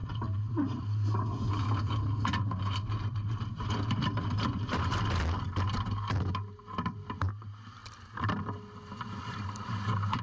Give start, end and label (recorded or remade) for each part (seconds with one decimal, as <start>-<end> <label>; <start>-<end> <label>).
0.0-7.8 remade; 7.8-9.2 recorded; 9.2-10.2 remade